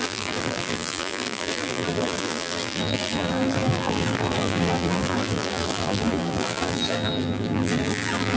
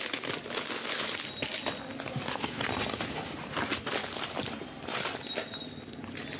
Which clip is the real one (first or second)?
second